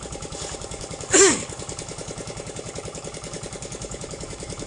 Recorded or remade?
remade